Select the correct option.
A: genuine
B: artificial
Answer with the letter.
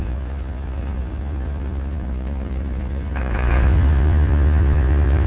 B